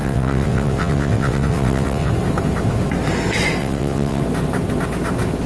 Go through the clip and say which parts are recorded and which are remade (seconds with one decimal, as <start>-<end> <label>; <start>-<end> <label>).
0.0-2.1 remade; 2.1-3.6 recorded; 3.6-4.2 remade; 4.2-5.5 recorded